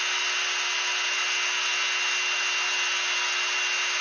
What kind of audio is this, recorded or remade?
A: recorded